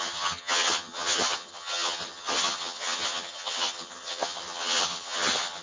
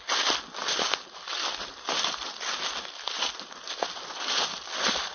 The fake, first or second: first